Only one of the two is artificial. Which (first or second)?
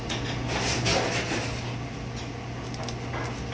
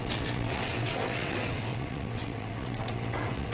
second